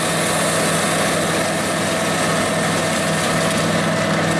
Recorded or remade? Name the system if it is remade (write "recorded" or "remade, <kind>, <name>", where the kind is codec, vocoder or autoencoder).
recorded